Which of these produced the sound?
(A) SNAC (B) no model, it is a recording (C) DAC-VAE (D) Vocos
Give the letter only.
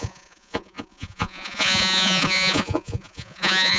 D